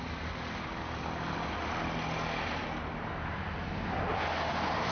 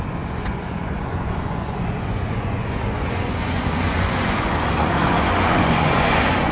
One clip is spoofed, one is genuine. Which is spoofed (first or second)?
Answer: second